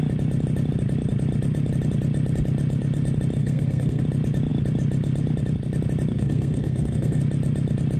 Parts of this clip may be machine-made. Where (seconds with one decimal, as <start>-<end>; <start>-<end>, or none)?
3.4-4.0; 6.1-7.2